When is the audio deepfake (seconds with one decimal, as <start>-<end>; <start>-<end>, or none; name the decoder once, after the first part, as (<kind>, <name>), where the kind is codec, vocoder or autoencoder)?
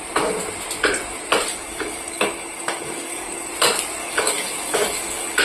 1.5-3.5 (codec, DAC); 4.0-5.4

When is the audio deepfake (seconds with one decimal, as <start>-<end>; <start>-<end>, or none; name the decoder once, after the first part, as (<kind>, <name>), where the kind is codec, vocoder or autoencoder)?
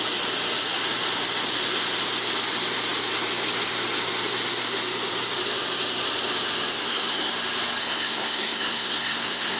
6.7-7.3 (codec, SNAC); 7.8-9.6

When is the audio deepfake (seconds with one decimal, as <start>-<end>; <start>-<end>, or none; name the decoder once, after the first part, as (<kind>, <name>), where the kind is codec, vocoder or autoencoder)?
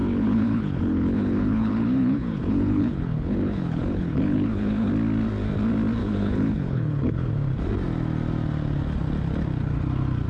0.0-4.9 (codec, HILCodec); 6.0-7.3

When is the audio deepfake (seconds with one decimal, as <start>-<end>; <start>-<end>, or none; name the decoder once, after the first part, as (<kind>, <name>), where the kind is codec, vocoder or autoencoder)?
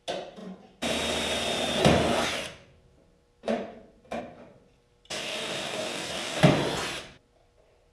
5.2-6.4 (codec, DAC)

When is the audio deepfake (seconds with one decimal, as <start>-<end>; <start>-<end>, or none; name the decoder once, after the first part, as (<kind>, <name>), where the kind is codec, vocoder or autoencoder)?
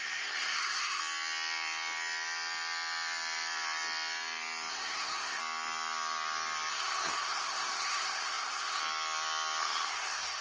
0.0-1.0 (codec, SNAC); 4.7-5.4; 6.7-8.8; 9.6-10.4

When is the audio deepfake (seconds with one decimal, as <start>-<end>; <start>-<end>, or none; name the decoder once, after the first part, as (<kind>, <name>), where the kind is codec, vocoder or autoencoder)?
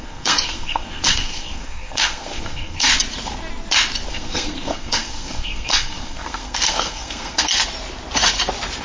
0.0-2.9 (codec, SNAC); 4.1-7.5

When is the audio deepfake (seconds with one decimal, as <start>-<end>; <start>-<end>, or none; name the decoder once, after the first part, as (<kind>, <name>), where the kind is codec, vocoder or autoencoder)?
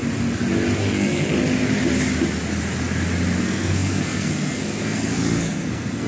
0.8-1.3 (codec, SNAC); 3.4-6.1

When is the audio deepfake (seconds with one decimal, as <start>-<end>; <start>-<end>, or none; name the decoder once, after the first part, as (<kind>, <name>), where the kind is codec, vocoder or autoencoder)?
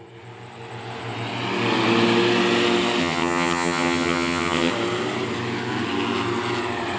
3.0-4.7 (vocoder, HiFi-GAN)